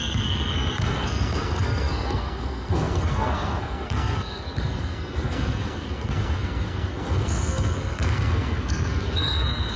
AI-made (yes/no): yes